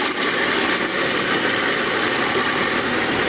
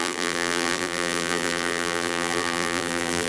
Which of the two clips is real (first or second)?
first